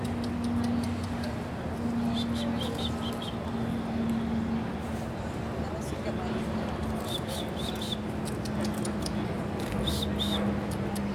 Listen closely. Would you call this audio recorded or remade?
recorded